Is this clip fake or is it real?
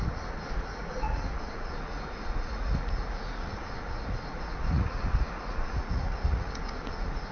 fake